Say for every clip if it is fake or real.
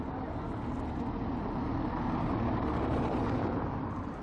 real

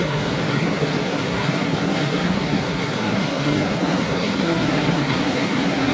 fake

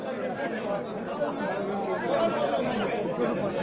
real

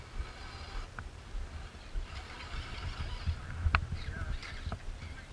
real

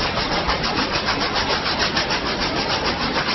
real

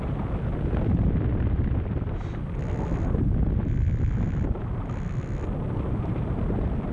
real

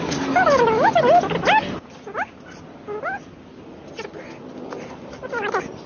real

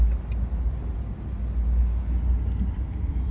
real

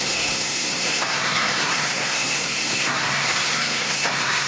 fake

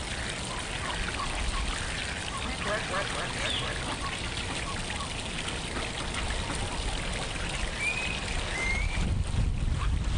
real